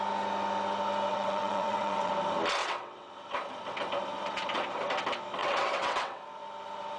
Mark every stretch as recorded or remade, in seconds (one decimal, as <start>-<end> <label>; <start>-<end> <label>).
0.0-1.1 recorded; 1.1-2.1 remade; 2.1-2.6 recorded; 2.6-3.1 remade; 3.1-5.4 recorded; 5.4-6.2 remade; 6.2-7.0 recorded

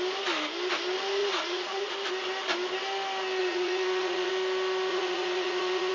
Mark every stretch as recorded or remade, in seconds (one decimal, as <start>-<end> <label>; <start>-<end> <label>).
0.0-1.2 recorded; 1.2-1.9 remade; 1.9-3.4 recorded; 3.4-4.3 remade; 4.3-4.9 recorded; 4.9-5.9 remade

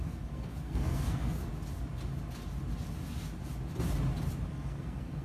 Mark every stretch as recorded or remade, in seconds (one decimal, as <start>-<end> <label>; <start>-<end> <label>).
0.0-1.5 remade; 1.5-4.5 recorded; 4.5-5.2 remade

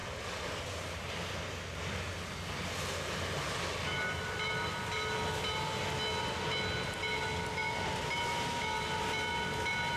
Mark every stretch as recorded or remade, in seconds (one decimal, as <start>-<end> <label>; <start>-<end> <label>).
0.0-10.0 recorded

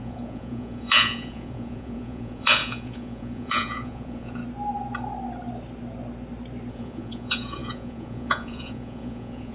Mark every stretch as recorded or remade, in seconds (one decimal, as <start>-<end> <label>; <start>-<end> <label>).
0.0-4.4 remade; 4.4-6.7 recorded; 6.7-9.5 remade

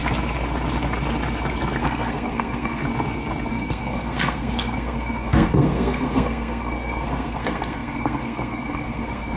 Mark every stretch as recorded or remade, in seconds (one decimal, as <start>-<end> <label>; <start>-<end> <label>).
0.0-1.8 recorded; 1.8-2.8 remade; 2.8-3.5 recorded; 3.5-9.4 remade

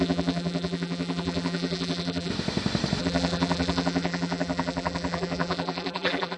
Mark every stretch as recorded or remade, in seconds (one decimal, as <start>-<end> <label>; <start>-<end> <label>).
0.0-2.3 remade; 2.3-3.0 recorded; 3.0-6.4 remade